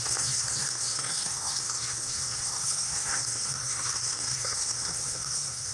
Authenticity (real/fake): fake